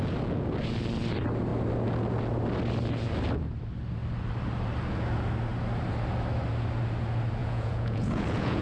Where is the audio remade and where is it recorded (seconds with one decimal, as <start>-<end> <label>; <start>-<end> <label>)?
0.0-7.4 recorded; 7.4-8.6 remade